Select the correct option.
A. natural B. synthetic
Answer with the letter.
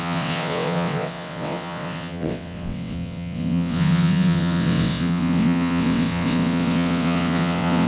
B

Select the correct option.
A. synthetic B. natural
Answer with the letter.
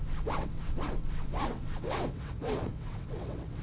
A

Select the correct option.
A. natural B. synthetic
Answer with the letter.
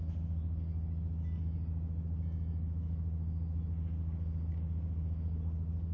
A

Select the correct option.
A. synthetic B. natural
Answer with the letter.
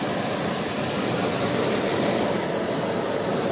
B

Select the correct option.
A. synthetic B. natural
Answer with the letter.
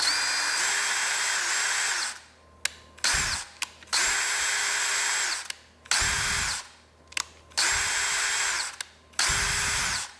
B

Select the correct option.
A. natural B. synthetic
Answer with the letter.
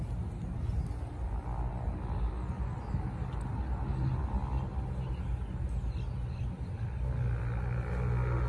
A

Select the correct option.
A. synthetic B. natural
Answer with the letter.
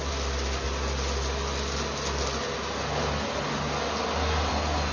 B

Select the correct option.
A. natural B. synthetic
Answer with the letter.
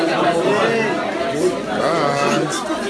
A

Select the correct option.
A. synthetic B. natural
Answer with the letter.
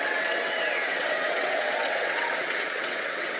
A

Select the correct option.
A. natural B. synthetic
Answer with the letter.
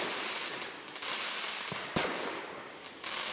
A